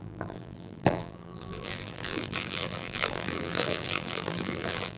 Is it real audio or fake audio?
fake